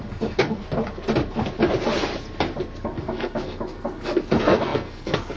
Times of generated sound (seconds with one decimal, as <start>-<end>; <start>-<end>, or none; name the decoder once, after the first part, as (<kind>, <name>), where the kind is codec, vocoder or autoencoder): 0.0-0.6 (codec, SNAC); 2.8-5.4